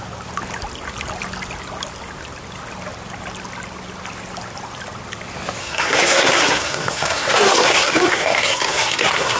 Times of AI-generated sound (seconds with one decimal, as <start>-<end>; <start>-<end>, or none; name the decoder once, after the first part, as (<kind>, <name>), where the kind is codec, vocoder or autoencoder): 5.6-9.4 (codec, SNAC)